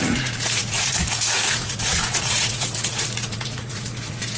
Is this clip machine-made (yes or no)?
yes